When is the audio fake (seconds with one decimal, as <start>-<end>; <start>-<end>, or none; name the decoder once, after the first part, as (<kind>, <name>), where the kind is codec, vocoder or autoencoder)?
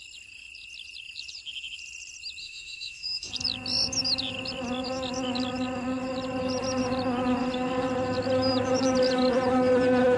2.4-3.3 (autoencoder, DAC-VAE)